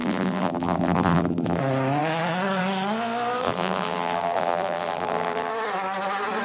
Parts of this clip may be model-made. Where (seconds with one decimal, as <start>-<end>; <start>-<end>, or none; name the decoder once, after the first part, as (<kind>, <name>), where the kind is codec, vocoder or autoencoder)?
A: 0.0-1.6 (vocoder, BigVGAN v2); 3.4-5.5